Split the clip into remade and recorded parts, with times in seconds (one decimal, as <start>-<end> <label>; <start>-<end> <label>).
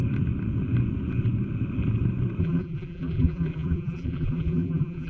0.0-2.4 recorded; 2.4-5.1 remade